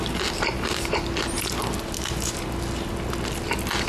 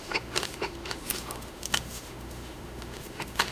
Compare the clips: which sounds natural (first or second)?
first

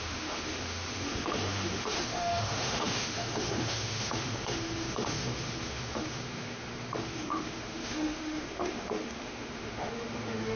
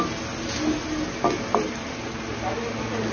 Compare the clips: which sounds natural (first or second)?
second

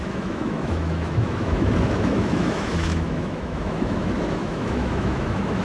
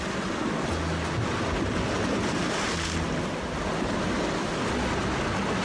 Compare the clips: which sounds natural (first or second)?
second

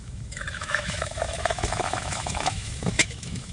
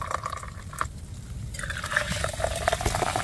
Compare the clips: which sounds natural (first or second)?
second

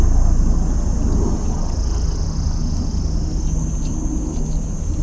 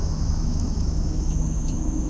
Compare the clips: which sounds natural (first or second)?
first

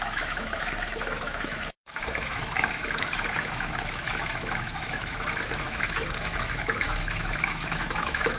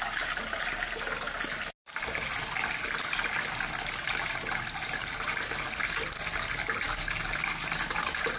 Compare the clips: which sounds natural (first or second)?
second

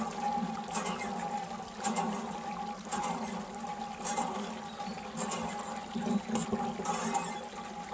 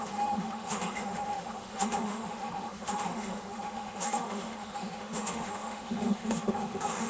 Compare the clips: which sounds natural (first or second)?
first